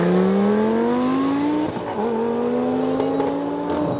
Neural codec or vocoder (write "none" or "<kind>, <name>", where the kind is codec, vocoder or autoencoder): none